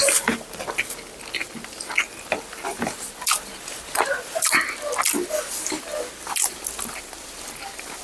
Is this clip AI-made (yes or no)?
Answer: no